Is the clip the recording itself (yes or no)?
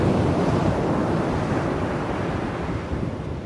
yes